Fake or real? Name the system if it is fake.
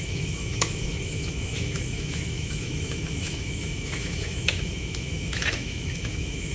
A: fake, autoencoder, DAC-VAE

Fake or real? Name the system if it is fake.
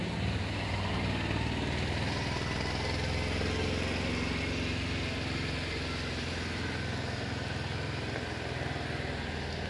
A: real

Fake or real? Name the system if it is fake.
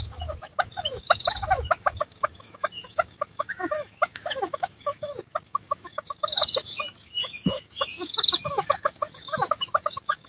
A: fake, autoencoder, DAC-VAE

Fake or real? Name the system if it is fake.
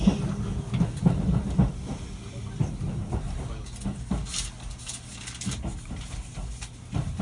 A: real